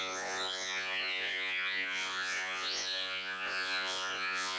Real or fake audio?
fake